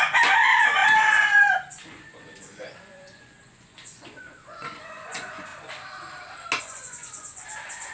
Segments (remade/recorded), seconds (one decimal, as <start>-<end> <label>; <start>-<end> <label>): 0.0-5.5 remade; 5.5-6.6 recorded; 6.6-7.9 remade